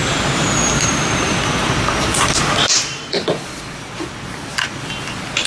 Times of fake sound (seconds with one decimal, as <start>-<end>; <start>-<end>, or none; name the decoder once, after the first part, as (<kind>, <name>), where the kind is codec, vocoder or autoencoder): 0.0-3.0 (vocoder, BigVGAN v2)

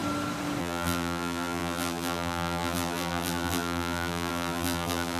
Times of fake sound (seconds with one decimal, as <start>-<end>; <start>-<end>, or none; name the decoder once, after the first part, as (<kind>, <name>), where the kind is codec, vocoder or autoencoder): 0.6-5.2 (vocoder, BigVGAN v2)

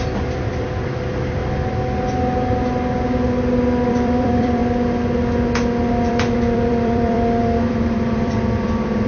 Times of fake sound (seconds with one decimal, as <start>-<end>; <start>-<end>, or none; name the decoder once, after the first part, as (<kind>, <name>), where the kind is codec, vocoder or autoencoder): 0.0-1.4 (vocoder, BigVGAN v2); 3.9-4.6; 5.9-9.1

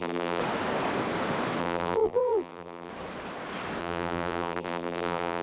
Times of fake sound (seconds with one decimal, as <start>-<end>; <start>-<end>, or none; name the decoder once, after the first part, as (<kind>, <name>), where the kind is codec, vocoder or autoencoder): 0.0-0.4 (vocoder, BigVGAN v2); 1.6-2.9; 3.8-5.4

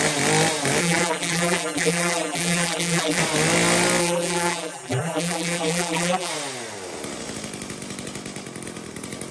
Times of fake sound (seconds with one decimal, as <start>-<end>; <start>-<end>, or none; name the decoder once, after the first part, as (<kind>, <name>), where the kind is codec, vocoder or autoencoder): 0.8-3.2 (vocoder, BigVGAN v2); 4.0-6.3

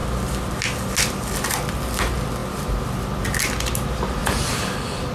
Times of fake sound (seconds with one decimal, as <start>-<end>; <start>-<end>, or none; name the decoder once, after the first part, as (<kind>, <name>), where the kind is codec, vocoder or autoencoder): 4.2-5.1 (vocoder, BigVGAN v2)